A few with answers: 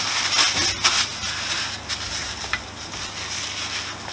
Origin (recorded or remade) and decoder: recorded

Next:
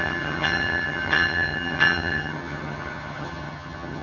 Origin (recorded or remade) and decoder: remade, vocoder, HiFi-GAN